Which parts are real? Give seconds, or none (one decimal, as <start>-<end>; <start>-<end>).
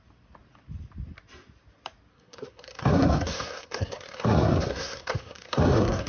0.0-2.1